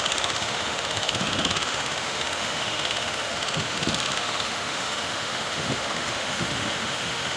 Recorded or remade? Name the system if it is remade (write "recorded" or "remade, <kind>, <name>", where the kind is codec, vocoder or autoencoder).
remade, autoencoder, DAC-VAE